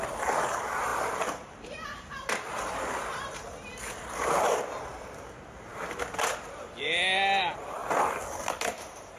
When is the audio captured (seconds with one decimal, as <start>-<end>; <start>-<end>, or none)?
7.8-8.6